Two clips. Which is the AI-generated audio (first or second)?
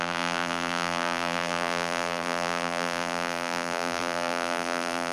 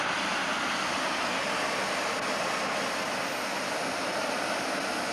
first